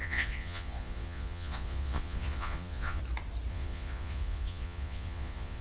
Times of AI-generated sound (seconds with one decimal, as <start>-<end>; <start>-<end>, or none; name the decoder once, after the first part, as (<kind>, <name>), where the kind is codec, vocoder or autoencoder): 0.0-3.0 (vocoder, Vocos); 3.5-5.6